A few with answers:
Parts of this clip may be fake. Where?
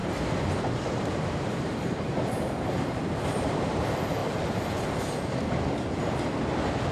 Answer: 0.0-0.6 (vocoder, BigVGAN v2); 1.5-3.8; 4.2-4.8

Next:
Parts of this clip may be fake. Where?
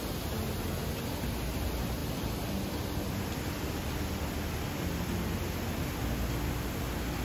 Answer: none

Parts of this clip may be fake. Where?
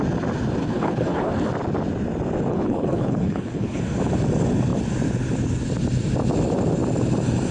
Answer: 0.6-1.5 (codec, HILCodec); 2.5-3.8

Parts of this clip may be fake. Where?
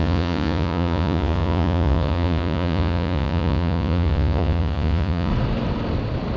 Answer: 0.0-5.3 (vocoder, Vocos)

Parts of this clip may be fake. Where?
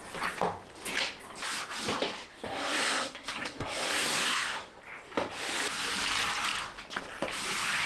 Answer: 2.2-4.8 (codec, SNAC)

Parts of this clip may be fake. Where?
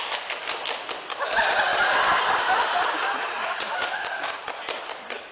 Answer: 3.4-4.4 (vocoder, Vocos)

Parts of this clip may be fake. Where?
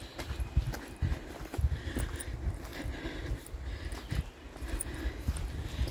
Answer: none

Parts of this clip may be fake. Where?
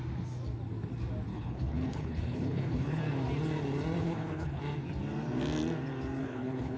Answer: 1.3-3.0 (codec, HILCodec); 4.0-4.6; 6.2-6.8